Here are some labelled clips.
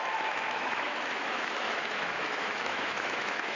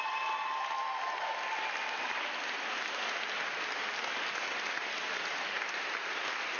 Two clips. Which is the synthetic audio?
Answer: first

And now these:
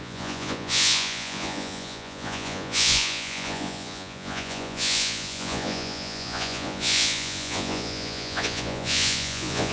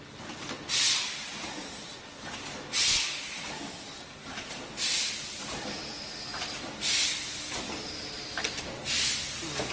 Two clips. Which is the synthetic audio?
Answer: first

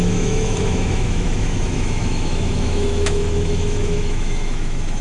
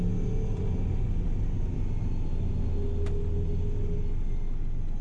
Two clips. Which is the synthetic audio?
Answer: first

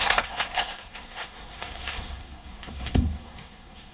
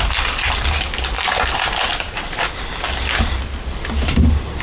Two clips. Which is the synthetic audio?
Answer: first